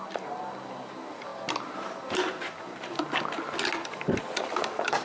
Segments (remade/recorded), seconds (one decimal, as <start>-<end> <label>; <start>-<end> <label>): 0.0-5.0 recorded